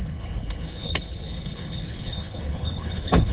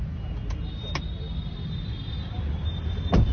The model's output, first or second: first